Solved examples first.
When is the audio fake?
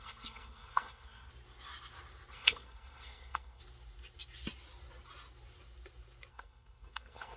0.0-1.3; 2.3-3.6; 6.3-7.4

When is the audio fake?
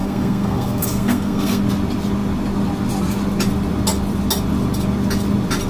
0.0-1.6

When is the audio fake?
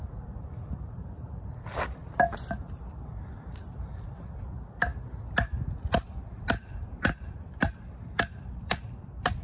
0.0-4.9; 6.8-9.4